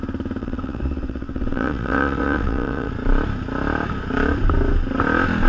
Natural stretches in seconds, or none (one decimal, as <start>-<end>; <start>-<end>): 0.0-0.4; 2.9-5.5